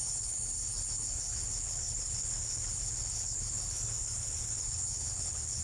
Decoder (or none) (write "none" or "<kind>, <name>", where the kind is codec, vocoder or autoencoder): codec, HILCodec